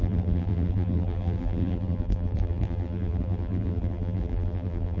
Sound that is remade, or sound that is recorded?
remade